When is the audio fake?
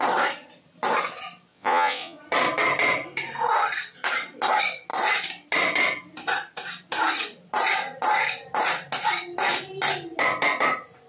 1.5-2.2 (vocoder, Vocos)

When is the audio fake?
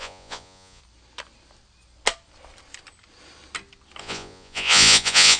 0.0-0.8 (vocoder, Vocos); 4.0-5.4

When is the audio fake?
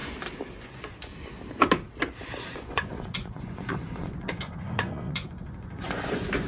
0.6-1.1 (vocoder, Vocos); 2.5-6.5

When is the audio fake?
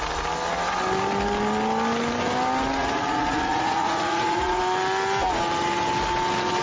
2.8-4.6 (vocoder, Vocos)